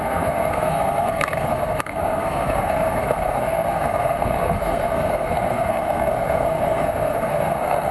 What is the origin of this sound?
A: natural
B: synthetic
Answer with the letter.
B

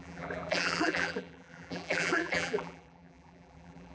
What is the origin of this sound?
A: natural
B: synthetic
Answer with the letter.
B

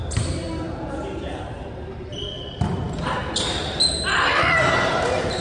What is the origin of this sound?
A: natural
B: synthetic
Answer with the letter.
A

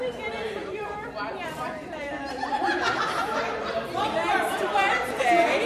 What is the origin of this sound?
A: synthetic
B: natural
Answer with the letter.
A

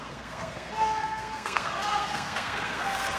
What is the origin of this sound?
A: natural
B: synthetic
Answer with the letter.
B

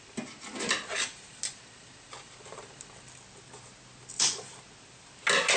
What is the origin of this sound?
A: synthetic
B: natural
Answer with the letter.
B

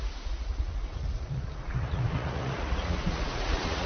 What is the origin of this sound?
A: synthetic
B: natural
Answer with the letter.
A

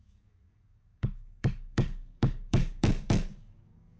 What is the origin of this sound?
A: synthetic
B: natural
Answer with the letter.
A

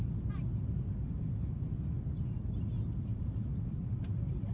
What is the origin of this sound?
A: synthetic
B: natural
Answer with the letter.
B